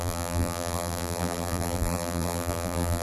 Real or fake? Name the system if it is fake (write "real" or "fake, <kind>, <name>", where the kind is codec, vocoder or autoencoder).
fake, vocoder, BigVGAN v2